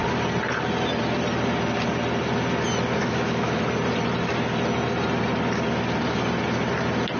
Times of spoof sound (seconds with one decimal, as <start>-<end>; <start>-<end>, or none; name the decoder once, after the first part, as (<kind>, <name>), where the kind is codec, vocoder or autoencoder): 3.0-3.6 (autoencoder, DAC-VAE)